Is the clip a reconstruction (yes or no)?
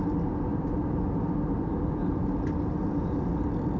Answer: no